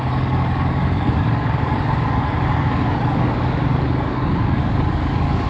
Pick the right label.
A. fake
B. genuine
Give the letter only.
A